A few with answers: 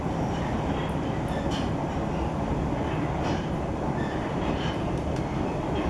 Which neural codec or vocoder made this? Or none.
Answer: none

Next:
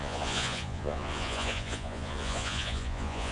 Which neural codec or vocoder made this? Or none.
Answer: vocoder, Vocos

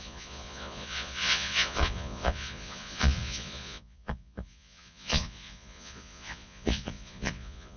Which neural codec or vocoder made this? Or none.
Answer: vocoder, Vocos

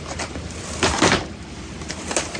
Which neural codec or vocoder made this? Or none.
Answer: none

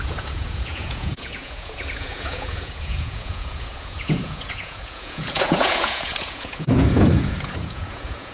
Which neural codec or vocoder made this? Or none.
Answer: vocoder, Vocos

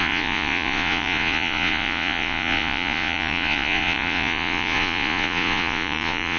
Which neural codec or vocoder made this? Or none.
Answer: vocoder, Vocos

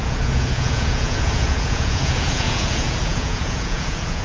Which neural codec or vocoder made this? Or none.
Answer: vocoder, Vocos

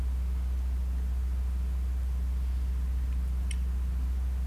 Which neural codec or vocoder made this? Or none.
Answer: none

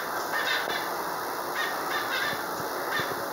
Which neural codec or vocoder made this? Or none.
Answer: none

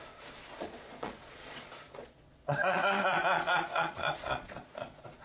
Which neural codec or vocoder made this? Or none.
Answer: vocoder, Vocos